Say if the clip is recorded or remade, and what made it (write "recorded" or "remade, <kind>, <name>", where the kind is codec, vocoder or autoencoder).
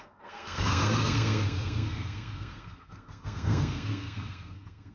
remade, codec, SNAC